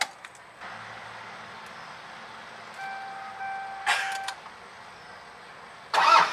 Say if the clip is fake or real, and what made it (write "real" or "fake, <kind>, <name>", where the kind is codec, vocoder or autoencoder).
real